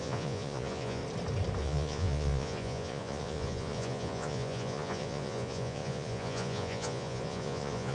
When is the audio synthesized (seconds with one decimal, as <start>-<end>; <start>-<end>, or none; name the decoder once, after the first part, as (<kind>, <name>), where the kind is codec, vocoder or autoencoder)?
0.0-1.0 (vocoder, Vocos); 1.6-7.9